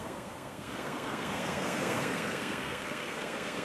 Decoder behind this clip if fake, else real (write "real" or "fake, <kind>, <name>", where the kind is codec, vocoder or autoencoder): fake, codec, SNAC